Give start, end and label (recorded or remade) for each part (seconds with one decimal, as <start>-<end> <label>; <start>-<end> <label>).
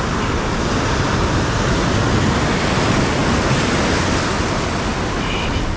0.0-5.8 recorded